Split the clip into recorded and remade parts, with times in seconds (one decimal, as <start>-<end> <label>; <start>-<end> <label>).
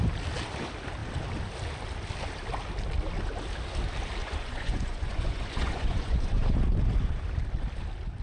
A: 0.0-4.2 recorded; 4.2-6.6 remade; 6.6-8.2 recorded